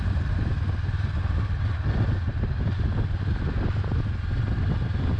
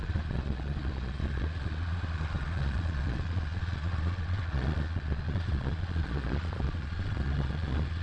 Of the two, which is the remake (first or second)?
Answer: second